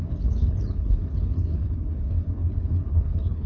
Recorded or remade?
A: remade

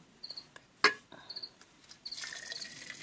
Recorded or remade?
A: recorded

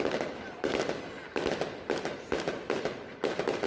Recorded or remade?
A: recorded